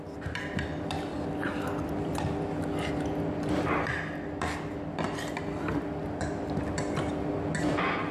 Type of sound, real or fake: real